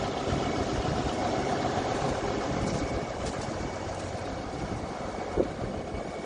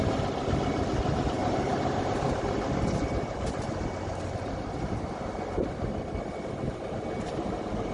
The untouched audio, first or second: second